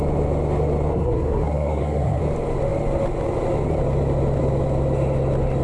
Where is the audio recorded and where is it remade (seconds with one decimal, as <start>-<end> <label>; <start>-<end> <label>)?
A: 0.0-0.9 recorded; 0.9-2.2 remade; 2.2-5.6 recorded